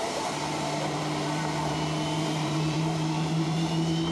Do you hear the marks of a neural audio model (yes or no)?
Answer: yes